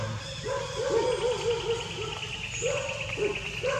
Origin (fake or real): real